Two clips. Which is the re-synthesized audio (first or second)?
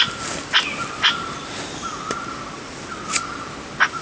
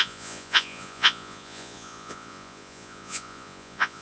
second